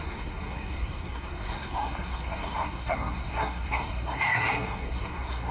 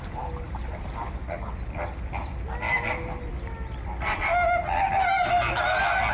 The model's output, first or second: first